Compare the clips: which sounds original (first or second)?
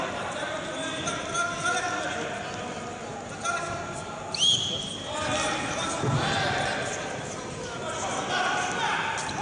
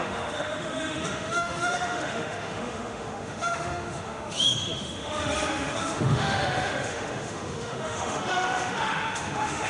first